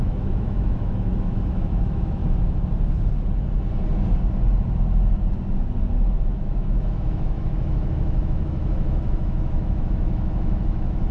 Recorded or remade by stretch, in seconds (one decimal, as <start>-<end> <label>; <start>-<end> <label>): 0.0-2.2 remade; 2.2-6.3 recorded; 6.3-11.1 remade